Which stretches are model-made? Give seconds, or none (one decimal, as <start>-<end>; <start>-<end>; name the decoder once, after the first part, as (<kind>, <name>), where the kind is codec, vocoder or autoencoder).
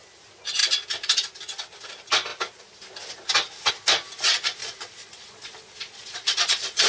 4.6-6.9 (vocoder, Vocos)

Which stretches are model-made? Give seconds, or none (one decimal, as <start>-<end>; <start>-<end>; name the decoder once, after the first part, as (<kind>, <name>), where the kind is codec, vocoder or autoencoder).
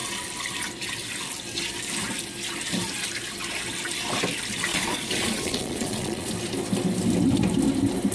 4.7-6.3 (vocoder, Vocos)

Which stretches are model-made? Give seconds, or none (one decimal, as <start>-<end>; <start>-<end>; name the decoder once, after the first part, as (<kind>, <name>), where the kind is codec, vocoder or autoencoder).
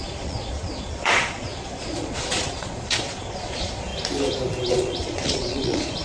0.0-3.9 (vocoder, Vocos); 4.7-6.0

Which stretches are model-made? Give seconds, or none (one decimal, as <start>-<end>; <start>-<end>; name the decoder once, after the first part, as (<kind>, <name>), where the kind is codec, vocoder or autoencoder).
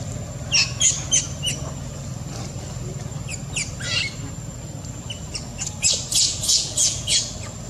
6.1-7.2 (vocoder, Vocos)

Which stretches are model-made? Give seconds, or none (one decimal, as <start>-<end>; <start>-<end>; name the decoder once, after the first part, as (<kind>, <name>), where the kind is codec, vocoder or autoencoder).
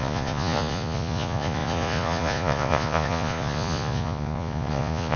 0.0-5.2 (vocoder, Vocos)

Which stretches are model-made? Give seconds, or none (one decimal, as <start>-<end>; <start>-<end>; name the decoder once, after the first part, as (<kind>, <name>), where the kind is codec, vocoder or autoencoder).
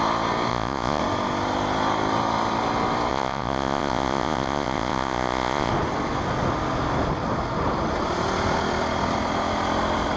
0.5-1.0 (vocoder, Vocos); 3.1-5.7